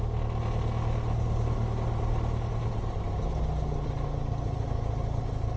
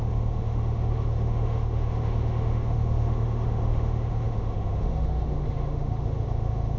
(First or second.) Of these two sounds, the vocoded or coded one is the second